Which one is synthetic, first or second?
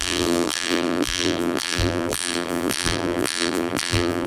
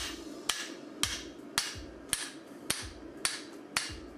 first